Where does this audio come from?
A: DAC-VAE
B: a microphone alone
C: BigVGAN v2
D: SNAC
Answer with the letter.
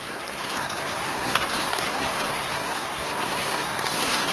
D